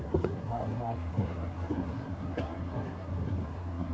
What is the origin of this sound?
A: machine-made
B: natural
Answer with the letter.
A